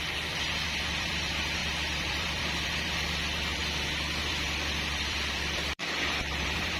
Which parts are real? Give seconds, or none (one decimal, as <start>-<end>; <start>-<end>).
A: 3.6-4.2